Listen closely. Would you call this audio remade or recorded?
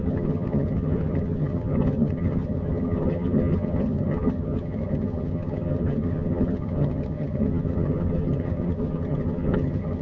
remade